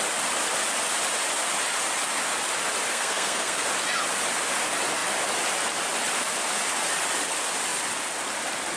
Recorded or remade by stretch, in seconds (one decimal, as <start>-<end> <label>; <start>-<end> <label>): 0.0-2.9 recorded; 2.9-3.6 remade; 3.6-8.8 recorded

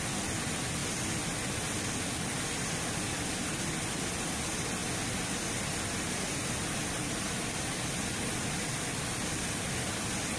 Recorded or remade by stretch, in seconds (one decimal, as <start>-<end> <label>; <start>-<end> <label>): 0.0-10.4 recorded